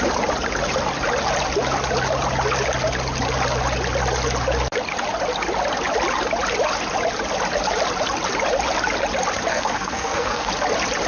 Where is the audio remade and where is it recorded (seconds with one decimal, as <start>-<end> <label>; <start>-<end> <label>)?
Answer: 0.0-9.5 recorded; 9.5-10.5 remade; 10.5-11.1 recorded